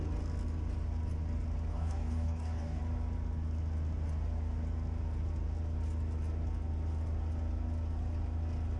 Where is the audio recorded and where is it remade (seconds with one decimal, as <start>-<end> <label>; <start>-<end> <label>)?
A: 0.0-1.7 recorded; 1.7-2.8 remade; 2.8-8.8 recorded